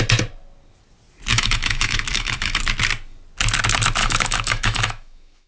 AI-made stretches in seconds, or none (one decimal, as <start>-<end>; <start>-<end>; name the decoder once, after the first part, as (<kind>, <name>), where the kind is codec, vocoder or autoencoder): 1.3-2.6 (autoencoder, DAC-VAE); 4.0-5.5